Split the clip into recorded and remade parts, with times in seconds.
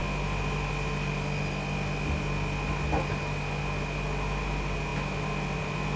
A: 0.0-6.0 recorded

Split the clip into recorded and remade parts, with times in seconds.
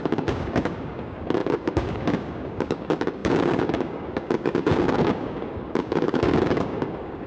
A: 0.0-7.3 remade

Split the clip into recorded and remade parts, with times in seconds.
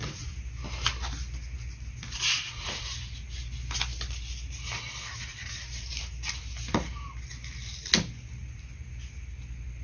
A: 0.0-5.3 recorded; 5.3-6.0 remade; 6.0-9.8 recorded